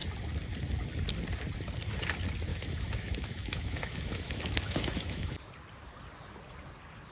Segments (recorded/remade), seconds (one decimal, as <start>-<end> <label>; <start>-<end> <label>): 0.0-2.5 recorded; 2.5-5.3 remade; 5.3-7.1 recorded